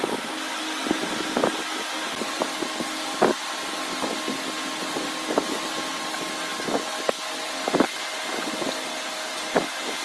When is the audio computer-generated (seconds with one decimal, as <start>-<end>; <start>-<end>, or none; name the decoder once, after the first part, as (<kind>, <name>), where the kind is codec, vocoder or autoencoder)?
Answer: none